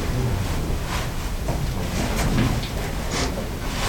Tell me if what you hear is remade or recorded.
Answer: recorded